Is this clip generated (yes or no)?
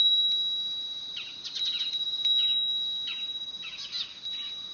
no